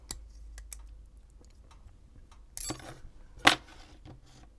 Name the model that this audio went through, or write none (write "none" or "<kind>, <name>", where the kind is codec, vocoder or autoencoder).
none